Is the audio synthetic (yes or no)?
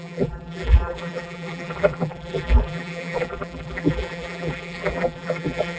yes